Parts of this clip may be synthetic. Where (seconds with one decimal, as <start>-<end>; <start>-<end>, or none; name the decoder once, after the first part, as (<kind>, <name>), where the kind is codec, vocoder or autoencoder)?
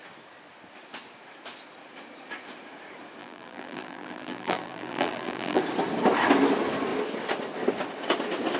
3.2-5.6 (vocoder, BigVGAN v2)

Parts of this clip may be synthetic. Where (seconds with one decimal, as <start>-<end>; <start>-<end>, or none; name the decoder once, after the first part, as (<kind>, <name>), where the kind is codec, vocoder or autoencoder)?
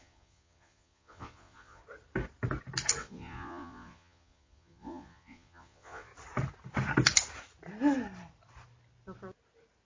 0.0-1.8 (vocoder, Vocos); 3.0-6.1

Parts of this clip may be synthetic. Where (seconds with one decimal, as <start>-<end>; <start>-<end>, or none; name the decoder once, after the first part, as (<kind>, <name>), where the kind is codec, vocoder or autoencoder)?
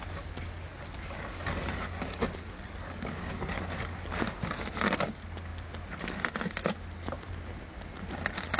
0.7-4.3 (codec, DAC)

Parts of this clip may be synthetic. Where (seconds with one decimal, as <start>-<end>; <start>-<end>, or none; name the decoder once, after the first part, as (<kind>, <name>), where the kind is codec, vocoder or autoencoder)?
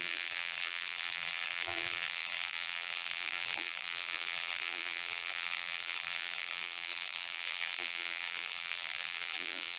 0.0-9.8 (vocoder, BigVGAN v2)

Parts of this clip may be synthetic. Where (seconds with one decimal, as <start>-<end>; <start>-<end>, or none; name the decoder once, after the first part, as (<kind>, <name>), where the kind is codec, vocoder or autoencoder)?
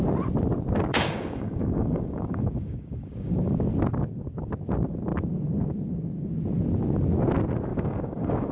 0.9-3.5 (codec, DAC); 7.7-8.5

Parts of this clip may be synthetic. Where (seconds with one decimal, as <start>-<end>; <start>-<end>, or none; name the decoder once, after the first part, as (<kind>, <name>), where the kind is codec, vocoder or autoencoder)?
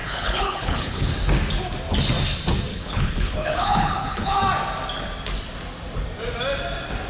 0.0-1.1 (codec, HILCodec); 2.7-4.4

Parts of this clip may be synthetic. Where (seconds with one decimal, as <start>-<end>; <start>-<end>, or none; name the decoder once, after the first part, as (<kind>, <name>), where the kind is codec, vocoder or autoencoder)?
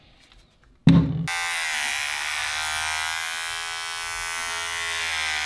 none